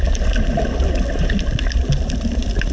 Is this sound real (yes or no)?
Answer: yes